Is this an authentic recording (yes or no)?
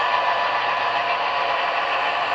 no